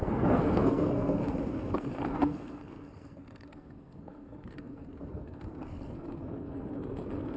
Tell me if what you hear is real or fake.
fake